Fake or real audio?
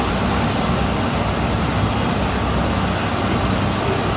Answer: real